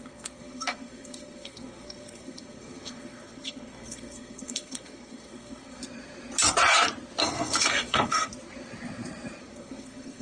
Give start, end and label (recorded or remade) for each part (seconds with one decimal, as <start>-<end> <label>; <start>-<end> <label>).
0.0-5.8 remade; 5.8-7.2 recorded; 7.2-8.3 remade; 8.3-9.4 recorded; 9.4-10.2 remade